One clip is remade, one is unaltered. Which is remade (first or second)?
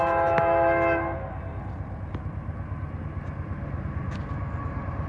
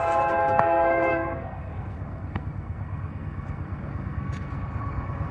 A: second